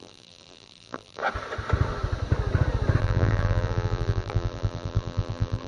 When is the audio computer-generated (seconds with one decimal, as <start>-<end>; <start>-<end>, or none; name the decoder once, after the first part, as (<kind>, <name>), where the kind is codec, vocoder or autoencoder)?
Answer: 0.0-1.2 (vocoder, BigVGAN v2); 3.0-5.7